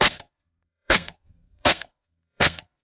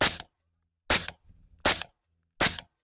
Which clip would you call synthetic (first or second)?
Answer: first